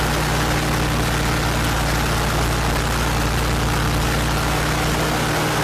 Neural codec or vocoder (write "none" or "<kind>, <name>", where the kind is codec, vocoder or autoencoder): vocoder, BigVGAN v2